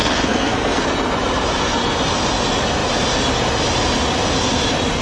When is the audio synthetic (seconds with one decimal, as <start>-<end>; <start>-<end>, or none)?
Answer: 0.0-0.8